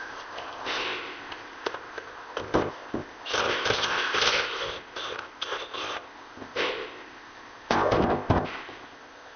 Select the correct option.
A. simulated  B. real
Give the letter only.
A